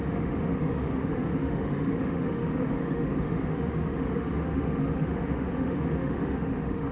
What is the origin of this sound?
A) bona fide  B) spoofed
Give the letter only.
B